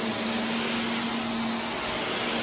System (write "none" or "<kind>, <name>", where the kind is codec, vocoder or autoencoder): none